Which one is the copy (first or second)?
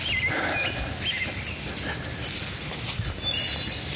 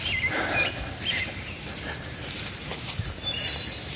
second